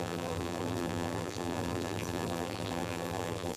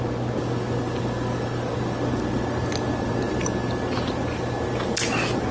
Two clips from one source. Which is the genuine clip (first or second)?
second